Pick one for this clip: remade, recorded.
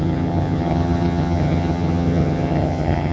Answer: remade